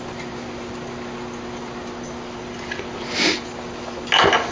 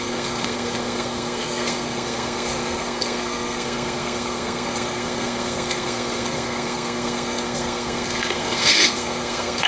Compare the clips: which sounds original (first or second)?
first